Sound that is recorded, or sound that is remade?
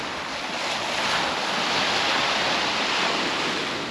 recorded